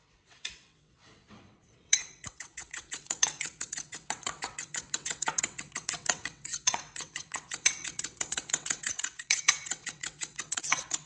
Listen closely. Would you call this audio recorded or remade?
remade